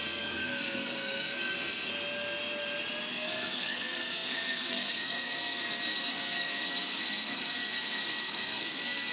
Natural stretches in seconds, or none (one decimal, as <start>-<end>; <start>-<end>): 1.9-3.1